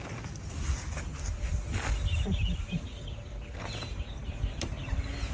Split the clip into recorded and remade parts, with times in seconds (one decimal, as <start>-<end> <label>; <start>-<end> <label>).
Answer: 0.0-5.3 recorded